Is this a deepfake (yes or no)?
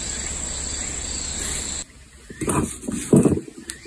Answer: no